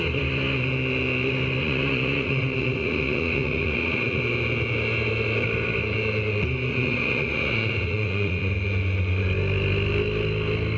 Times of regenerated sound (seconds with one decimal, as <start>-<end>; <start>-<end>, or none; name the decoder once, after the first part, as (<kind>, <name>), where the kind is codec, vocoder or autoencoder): 1.6-4.2 (vocoder, Vocos); 6.7-8.5